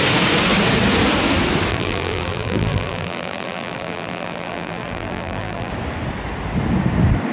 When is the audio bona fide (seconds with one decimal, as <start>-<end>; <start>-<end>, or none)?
0.0-1.7; 5.7-7.3